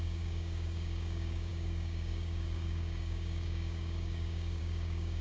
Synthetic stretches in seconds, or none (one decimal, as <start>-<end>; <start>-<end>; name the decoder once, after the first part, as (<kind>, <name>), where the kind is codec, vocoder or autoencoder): 0.0-5.2 (codec, DAC)